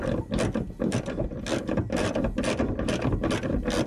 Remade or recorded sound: recorded